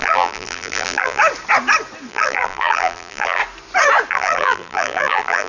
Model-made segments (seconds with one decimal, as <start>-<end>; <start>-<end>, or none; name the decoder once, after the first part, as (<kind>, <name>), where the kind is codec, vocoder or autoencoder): 0.0-1.2 (vocoder, BigVGAN v2); 2.1-3.4; 4.1-5.5